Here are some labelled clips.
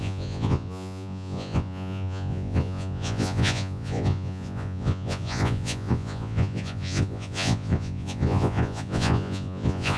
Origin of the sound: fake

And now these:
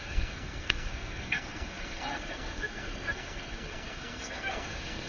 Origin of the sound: fake